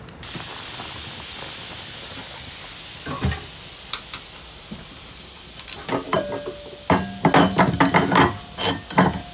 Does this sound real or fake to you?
real